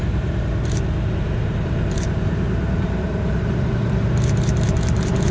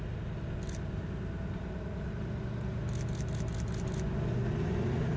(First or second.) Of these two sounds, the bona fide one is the second